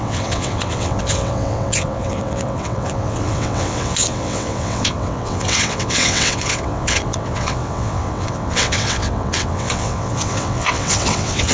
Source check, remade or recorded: remade